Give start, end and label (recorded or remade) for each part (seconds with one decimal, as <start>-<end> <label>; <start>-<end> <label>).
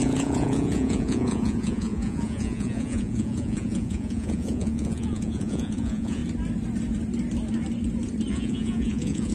0.0-6.2 remade; 6.2-8.3 recorded; 8.3-9.3 remade